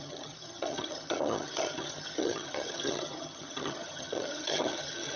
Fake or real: fake